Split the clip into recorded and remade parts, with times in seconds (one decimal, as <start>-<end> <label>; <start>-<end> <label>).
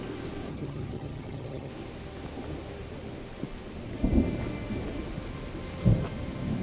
0.0-0.5 recorded; 0.5-1.7 remade; 1.7-6.6 recorded